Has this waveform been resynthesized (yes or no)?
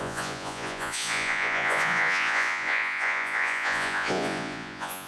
yes